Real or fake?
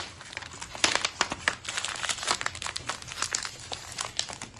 real